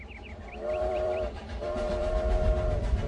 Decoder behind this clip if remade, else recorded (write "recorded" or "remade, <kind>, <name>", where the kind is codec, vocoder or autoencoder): remade, vocoder, BigVGAN v2